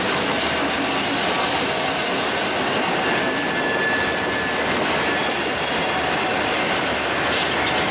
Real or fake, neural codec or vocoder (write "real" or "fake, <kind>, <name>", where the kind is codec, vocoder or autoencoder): real